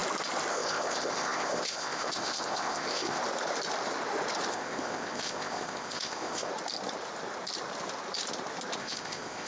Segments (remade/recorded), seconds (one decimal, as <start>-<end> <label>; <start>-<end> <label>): 0.0-0.5 recorded; 0.5-3.2 remade; 3.2-4.5 recorded; 4.5-6.5 remade; 6.5-8.8 recorded; 8.8-9.5 remade